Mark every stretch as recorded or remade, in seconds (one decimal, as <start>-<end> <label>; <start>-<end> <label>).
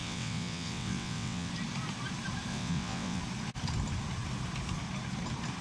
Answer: 0.0-1.5 remade; 1.5-2.5 recorded; 2.5-3.2 remade; 3.2-5.6 recorded